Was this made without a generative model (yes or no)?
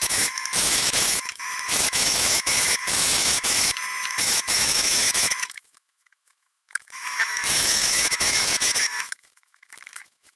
no